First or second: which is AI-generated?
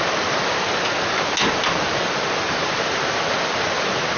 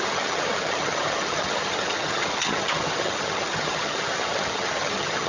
second